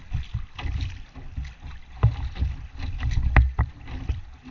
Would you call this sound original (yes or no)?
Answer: yes